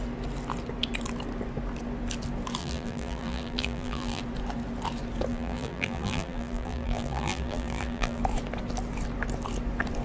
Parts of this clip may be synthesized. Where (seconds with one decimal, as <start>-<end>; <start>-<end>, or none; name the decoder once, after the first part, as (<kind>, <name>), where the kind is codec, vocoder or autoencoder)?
2.6-4.2 (vocoder, BigVGAN v2); 5.3-8.2